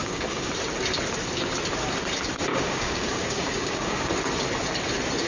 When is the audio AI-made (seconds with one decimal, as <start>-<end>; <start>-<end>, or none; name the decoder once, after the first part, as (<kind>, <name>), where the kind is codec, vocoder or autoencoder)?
0.0-0.5 (codec, DAC); 2.5-4.0